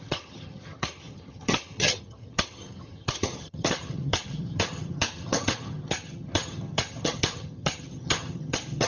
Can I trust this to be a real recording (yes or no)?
no